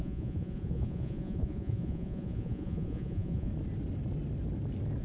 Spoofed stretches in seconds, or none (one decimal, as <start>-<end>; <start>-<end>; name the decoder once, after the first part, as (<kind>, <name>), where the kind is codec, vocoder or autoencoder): 0.0-3.5 (vocoder, Vocos)